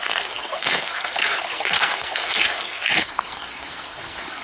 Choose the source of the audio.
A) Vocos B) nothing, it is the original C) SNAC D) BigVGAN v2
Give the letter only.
C